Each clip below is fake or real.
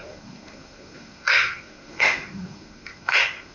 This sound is fake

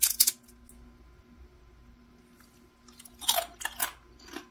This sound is real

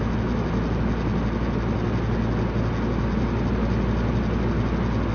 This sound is real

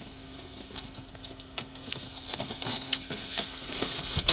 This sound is fake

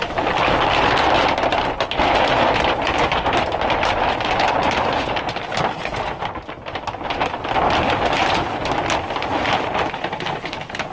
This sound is real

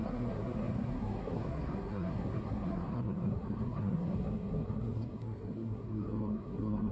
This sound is fake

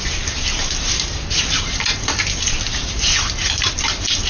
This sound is real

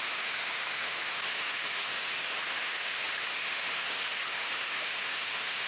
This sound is fake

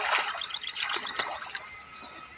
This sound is real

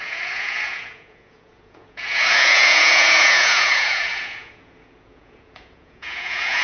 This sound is fake